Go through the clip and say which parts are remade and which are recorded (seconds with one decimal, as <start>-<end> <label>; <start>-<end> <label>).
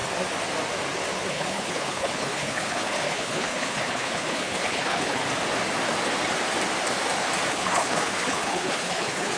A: 0.0-1.3 recorded; 1.3-5.2 remade; 5.2-7.5 recorded; 7.5-9.4 remade